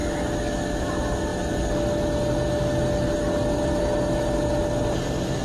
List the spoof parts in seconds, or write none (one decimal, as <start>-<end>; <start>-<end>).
none